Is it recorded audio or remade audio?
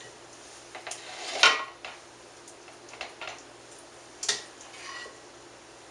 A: recorded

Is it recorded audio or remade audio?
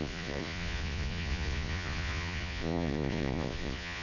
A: remade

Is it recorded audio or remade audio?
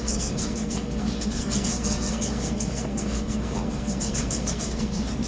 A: remade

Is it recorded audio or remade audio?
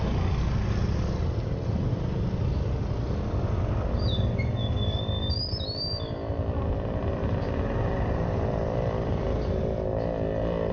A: recorded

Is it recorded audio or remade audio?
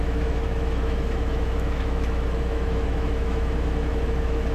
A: remade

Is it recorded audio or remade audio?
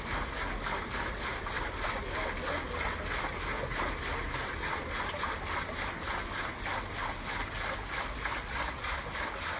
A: recorded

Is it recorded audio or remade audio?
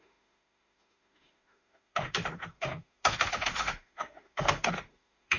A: remade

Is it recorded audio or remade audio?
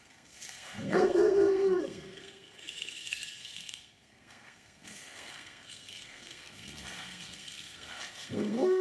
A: remade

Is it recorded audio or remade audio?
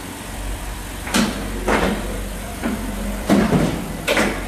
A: remade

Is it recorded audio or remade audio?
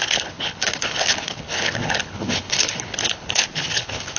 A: remade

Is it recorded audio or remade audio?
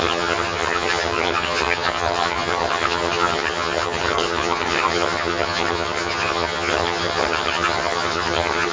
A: remade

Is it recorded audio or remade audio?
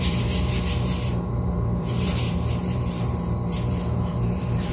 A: remade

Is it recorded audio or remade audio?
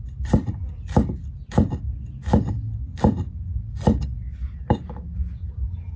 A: recorded